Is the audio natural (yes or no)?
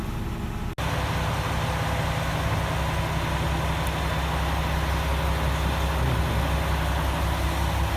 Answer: yes